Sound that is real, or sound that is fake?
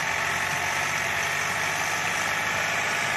real